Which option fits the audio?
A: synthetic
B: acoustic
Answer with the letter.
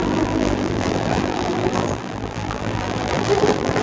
A